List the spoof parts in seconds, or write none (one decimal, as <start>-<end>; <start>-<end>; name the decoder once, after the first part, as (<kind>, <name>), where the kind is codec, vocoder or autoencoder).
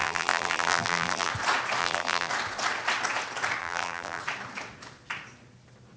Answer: 0.0-1.3 (vocoder, BigVGAN v2); 1.8-2.3; 3.6-4.2